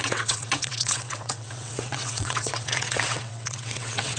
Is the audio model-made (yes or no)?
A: yes